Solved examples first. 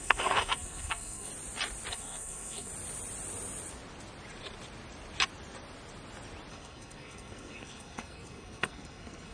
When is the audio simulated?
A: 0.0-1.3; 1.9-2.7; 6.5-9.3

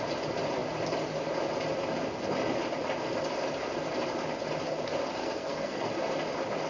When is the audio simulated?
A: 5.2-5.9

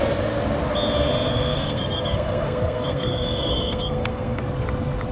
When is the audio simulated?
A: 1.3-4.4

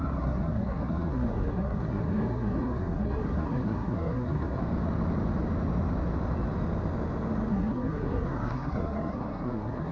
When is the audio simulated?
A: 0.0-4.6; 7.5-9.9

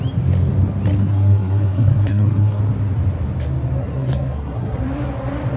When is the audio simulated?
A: 1.0-2.6; 3.8-4.8